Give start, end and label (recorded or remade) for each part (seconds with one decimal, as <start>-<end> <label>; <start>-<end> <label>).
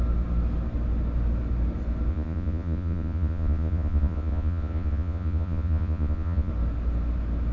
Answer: 0.0-2.1 recorded; 2.1-6.5 remade; 6.5-7.5 recorded